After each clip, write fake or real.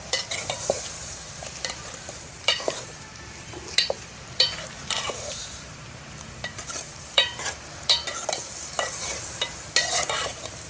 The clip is fake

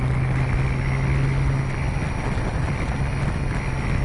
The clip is real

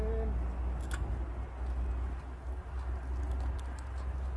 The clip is real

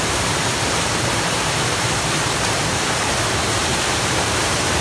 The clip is fake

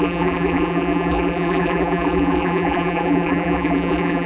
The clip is fake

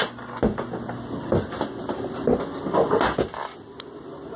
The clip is real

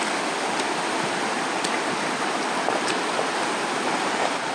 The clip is real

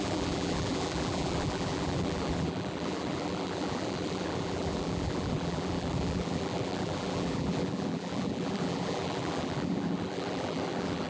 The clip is fake